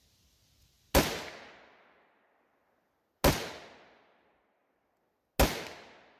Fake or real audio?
real